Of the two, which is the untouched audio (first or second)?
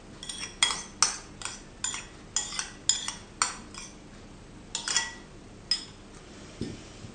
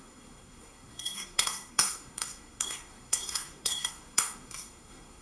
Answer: first